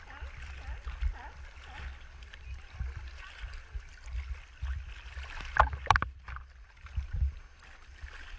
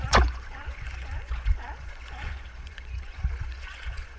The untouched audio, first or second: first